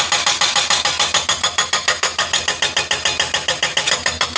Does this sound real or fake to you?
real